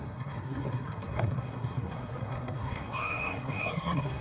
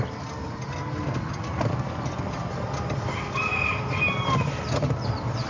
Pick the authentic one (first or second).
second